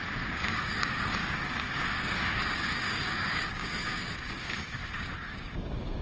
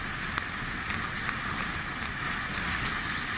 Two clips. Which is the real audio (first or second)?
second